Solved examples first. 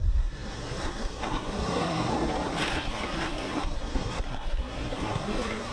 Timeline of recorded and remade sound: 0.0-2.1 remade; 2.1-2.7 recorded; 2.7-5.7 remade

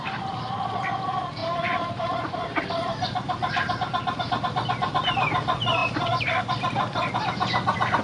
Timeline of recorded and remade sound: 0.0-1.4 recorded; 1.4-2.6 remade; 2.6-8.0 recorded

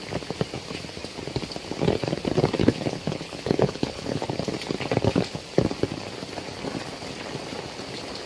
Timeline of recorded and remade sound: 0.0-2.6 recorded; 2.6-4.3 remade; 4.3-8.3 recorded